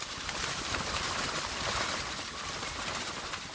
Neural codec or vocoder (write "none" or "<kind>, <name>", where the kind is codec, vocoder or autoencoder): none